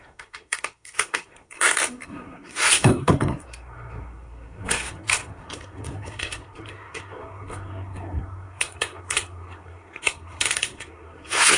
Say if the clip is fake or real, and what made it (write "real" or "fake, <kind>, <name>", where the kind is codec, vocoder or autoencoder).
fake, codec, SNAC